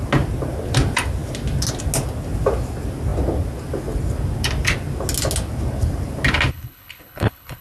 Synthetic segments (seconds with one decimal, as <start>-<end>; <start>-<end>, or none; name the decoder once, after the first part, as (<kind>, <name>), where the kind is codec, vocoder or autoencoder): 6.5-7.6 (codec, HILCodec)